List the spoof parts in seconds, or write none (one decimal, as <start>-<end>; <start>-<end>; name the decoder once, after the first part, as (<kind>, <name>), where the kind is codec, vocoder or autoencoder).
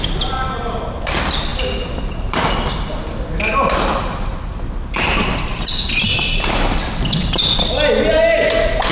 none